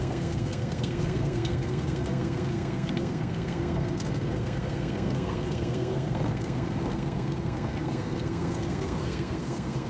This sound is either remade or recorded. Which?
remade